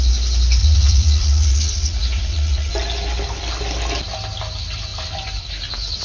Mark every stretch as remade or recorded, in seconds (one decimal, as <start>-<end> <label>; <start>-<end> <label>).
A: 0.0-0.6 recorded; 0.6-2.7 remade; 2.7-6.0 recorded